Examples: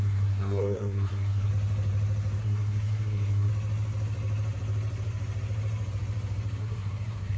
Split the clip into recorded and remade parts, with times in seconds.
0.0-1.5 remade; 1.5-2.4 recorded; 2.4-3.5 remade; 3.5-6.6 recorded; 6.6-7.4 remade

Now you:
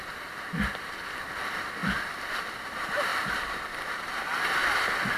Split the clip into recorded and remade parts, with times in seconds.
0.0-5.2 recorded

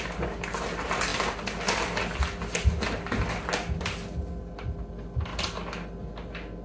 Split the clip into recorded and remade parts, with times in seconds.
0.0-6.6 recorded

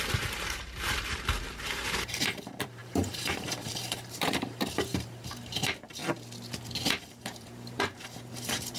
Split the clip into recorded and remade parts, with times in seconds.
0.0-6.0 remade; 6.0-7.0 recorded; 7.0-8.8 remade

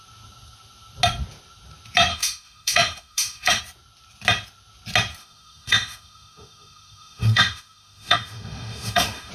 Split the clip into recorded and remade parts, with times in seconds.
0.0-2.1 recorded; 2.1-3.6 remade; 3.6-5.2 recorded; 5.2-9.3 remade

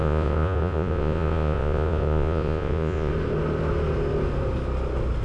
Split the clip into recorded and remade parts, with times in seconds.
0.0-3.1 remade; 3.1-5.2 recorded

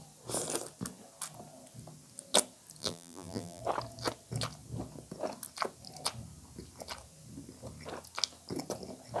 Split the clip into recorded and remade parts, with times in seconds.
0.0-2.8 recorded; 2.8-3.6 remade; 3.6-9.2 recorded